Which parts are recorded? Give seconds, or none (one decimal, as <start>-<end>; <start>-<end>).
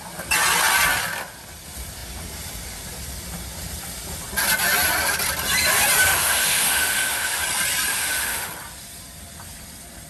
0.0-6.0; 7.4-7.9; 8.5-10.1